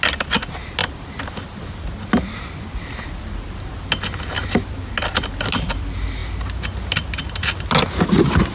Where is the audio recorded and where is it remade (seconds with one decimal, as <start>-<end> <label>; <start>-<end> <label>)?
0.0-8.5 recorded

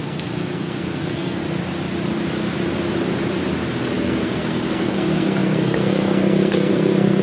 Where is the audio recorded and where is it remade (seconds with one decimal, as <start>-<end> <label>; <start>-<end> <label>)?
0.0-1.4 remade; 1.4-4.0 recorded; 4.0-7.2 remade